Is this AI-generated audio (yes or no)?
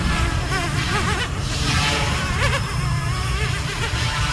yes